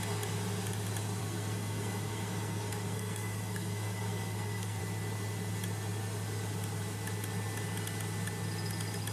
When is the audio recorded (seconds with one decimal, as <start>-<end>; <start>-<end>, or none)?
0.0-1.2; 4.8-9.1